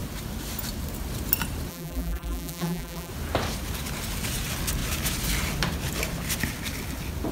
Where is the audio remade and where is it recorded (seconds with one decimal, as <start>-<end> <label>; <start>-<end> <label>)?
0.0-1.7 recorded; 1.7-3.1 remade; 3.1-7.3 recorded